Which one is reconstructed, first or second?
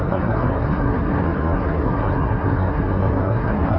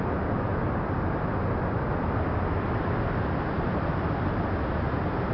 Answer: first